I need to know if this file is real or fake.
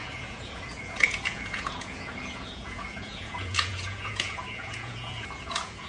fake